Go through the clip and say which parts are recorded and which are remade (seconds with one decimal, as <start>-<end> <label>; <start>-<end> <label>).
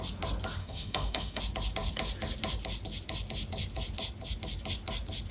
0.0-0.6 recorded; 0.6-1.4 remade; 1.4-5.3 recorded